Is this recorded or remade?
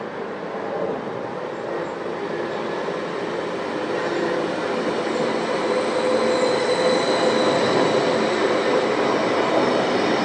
recorded